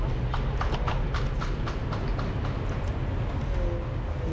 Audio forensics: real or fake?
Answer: real